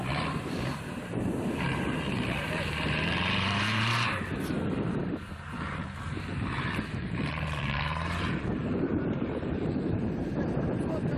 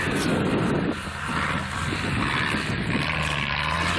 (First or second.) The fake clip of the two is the first